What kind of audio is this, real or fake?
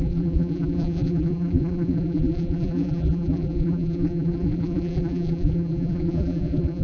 fake